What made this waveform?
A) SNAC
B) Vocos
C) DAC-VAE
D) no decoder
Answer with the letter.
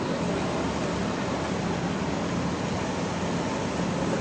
D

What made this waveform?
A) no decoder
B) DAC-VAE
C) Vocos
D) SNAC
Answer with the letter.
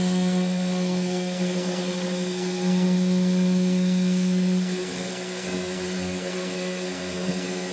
D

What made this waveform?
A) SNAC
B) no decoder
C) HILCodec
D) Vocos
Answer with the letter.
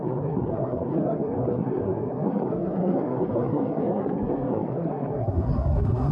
A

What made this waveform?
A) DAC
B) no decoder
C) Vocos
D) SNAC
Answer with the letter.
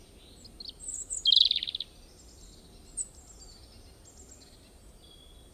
B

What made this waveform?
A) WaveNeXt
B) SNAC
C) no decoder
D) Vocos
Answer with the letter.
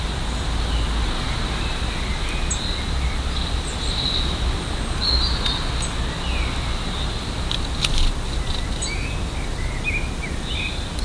C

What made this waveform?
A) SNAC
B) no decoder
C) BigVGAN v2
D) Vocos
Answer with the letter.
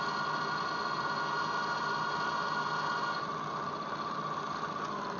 B